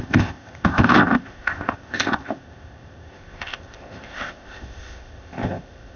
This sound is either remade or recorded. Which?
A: remade